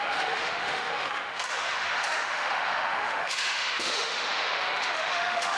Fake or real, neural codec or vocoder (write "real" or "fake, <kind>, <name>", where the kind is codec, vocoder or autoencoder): fake, autoencoder, DAC-VAE